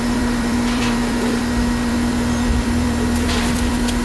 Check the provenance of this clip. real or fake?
fake